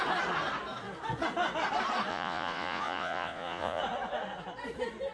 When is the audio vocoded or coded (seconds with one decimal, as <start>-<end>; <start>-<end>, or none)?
2.1-3.8